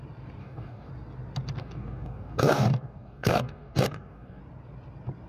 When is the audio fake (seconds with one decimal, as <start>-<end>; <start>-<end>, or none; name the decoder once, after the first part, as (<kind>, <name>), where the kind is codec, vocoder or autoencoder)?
0.4-0.9 (codec, DAC); 1.6-4.4